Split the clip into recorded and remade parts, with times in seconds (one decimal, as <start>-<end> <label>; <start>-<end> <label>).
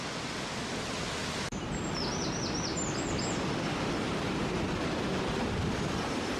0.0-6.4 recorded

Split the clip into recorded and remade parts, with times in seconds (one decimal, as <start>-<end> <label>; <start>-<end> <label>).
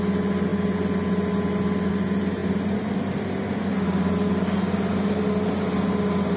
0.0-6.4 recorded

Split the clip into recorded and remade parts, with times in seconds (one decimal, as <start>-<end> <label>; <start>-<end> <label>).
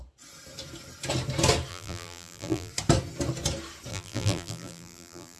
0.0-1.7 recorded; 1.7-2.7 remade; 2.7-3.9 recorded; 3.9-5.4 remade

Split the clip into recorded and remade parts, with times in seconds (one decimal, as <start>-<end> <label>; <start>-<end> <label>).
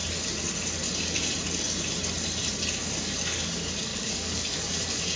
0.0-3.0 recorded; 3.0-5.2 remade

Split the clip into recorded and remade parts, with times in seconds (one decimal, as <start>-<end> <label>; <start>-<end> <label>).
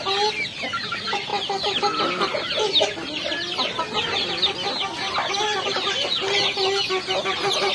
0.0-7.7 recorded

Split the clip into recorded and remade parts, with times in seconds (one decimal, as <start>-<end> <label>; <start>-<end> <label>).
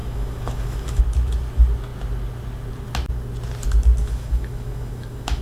0.0-1.0 remade; 1.0-4.0 recorded; 4.0-5.4 remade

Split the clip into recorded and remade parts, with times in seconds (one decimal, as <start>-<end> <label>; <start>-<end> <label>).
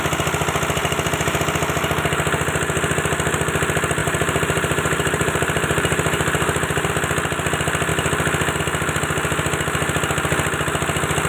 0.0-0.8 recorded; 0.8-1.4 remade; 1.4-4.0 recorded; 4.0-6.9 remade; 6.9-11.3 recorded